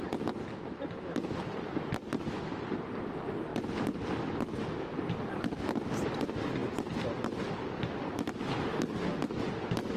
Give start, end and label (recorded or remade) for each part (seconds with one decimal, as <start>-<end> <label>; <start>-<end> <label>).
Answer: 0.0-10.0 recorded